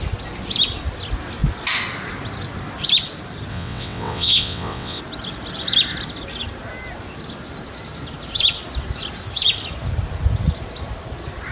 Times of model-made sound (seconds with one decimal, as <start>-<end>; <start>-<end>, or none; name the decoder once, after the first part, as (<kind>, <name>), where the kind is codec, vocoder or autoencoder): 3.5-5.0 (vocoder, WaveNeXt)